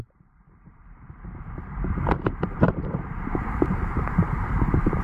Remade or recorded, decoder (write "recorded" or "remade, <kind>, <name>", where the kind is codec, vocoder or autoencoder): remade, vocoder, BigVGAN v2